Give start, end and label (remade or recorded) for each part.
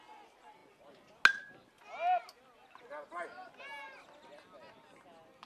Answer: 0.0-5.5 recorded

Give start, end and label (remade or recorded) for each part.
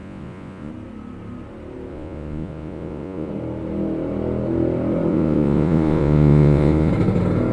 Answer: 0.0-0.7 remade; 0.7-1.9 recorded; 1.9-3.3 remade; 3.3-5.1 recorded; 5.1-6.9 remade; 6.9-7.5 recorded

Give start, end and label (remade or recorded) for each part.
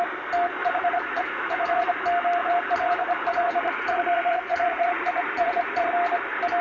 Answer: 0.0-0.6 recorded; 0.6-1.9 remade; 1.9-2.4 recorded; 2.4-5.9 remade; 5.9-6.6 recorded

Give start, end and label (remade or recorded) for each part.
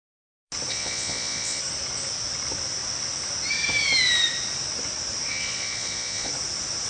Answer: 0.0-0.7 recorded; 0.7-1.6 remade; 1.6-5.3 recorded; 5.3-6.3 remade; 6.3-6.9 recorded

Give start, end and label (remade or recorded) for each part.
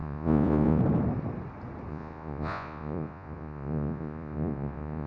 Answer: 0.0-0.8 remade; 0.8-1.9 recorded; 1.9-5.1 remade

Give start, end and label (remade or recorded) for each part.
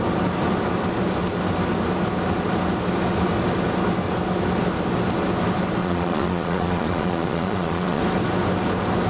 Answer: 0.0-5.8 recorded; 5.8-8.0 remade; 8.0-9.1 recorded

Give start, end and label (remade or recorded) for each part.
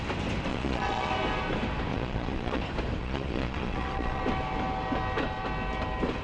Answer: 0.0-0.5 recorded; 0.5-1.1 remade; 1.1-1.9 recorded; 1.9-2.6 remade; 2.6-3.0 recorded; 3.0-4.2 remade; 4.2-6.2 recorded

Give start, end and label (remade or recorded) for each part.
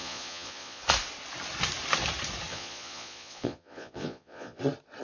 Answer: 0.0-0.9 remade; 0.9-2.5 recorded; 2.5-4.6 remade; 4.6-5.0 recorded